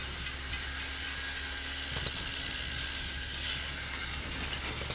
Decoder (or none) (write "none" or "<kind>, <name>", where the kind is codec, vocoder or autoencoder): none